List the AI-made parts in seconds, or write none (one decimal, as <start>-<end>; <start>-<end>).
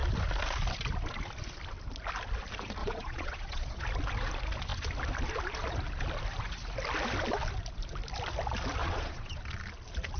2.8-3.8; 8.8-9.4